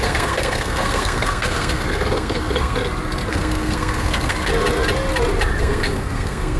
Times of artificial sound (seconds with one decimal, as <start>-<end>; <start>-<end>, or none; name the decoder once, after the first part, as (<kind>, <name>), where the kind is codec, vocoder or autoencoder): 0.0-2.8 (codec, SNAC); 3.3-4.5; 5.6-6.6